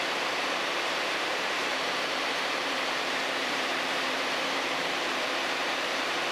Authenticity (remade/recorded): remade